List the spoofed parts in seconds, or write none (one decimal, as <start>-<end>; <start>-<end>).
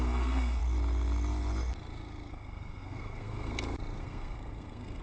0.0-0.6; 2.3-3.5; 4.0-5.0